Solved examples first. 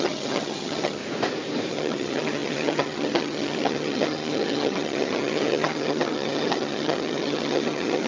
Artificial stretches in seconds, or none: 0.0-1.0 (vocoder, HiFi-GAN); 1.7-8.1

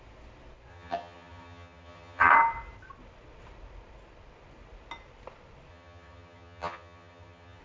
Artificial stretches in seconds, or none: 0.7-2.3 (vocoder, HiFi-GAN); 5.7-7.6

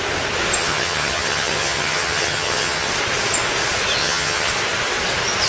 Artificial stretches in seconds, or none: 0.6-2.9 (vocoder, HiFi-GAN); 4.0-4.5

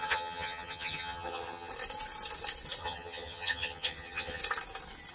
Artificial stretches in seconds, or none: 0.0-1.7 (vocoder, HiFi-GAN); 2.8-4.4

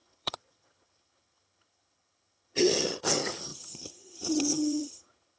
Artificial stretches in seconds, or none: 0.0-5.4 (vocoder, HiFi-GAN)